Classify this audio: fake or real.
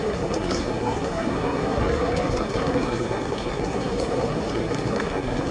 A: fake